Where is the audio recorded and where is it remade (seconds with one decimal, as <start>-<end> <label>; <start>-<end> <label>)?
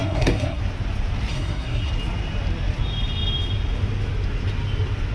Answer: 0.0-0.6 remade; 0.6-1.3 recorded; 1.3-1.9 remade; 1.9-5.1 recorded